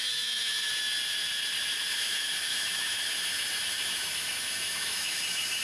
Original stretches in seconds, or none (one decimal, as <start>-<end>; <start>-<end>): 0.7-1.9